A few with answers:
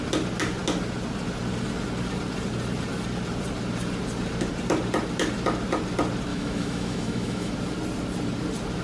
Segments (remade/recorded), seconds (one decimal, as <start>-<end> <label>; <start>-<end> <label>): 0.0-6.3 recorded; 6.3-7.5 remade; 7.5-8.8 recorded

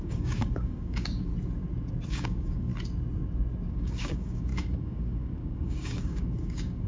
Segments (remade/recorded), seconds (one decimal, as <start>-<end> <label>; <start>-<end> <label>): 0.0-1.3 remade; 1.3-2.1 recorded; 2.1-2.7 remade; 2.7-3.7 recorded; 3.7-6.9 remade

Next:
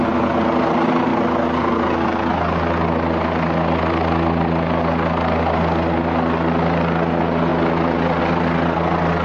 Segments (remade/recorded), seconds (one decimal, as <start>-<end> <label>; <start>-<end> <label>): 0.0-9.2 recorded

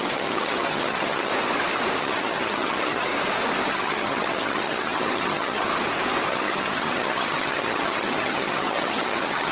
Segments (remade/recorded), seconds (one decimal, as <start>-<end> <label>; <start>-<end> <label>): 0.0-1.3 remade; 1.3-2.0 recorded; 2.0-3.1 remade; 3.1-3.7 recorded; 3.7-5.7 remade; 5.7-6.3 recorded; 6.3-9.5 remade